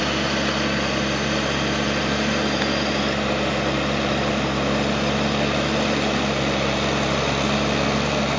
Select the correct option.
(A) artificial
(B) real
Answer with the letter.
B